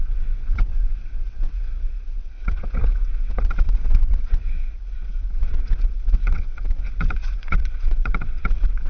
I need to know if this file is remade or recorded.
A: remade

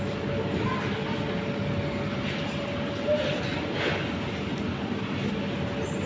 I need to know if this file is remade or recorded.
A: recorded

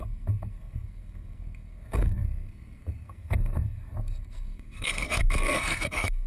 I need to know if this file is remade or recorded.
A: remade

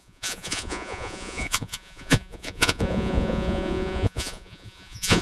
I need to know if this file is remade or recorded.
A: remade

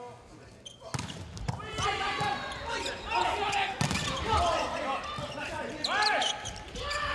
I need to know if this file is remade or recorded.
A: recorded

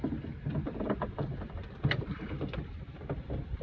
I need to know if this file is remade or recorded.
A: remade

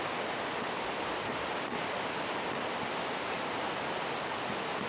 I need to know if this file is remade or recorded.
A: recorded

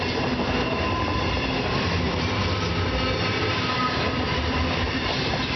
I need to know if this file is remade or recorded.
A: recorded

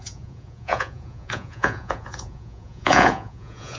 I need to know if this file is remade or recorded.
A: remade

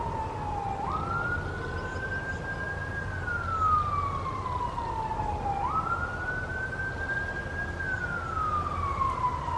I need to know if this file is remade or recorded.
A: recorded